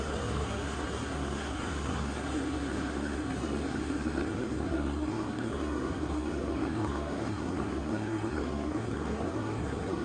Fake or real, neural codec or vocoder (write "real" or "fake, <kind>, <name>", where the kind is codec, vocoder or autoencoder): fake, codec, SNAC